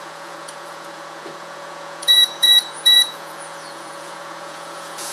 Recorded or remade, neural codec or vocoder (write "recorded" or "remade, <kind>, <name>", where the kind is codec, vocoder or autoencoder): remade, vocoder, Vocos